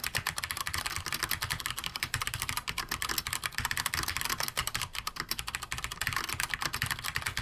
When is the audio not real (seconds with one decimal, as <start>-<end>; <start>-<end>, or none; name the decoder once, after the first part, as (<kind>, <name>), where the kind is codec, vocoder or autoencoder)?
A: 1.8-2.9 (vocoder, BigVGAN v2); 4.6-5.5